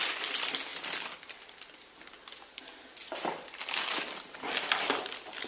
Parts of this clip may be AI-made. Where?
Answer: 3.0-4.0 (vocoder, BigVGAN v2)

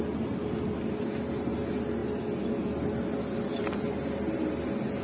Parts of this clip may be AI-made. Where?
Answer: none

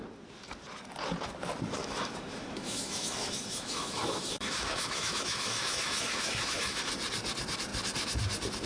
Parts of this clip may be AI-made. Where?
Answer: 1.8-6.8 (autoencoder, DAC-VAE)